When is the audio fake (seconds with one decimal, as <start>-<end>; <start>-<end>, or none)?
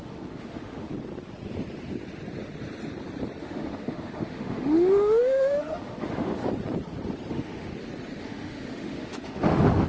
0.0-0.9; 3.4-6.4; 7.3-7.7; 8.2-9.9